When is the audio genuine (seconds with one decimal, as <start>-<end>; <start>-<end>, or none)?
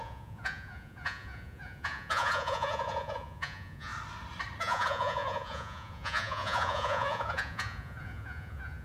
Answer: 3.9-4.6